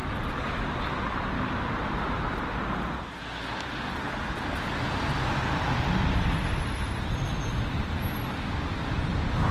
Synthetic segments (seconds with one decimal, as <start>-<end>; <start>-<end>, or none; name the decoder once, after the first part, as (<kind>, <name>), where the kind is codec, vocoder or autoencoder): none